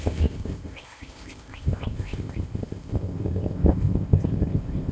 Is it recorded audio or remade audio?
remade